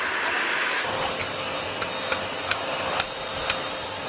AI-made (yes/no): no